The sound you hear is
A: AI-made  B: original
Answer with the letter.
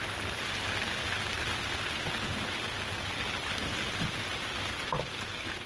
B